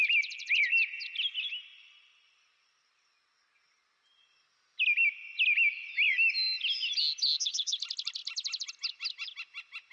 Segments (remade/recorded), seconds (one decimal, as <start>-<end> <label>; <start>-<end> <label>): 0.0-9.9 recorded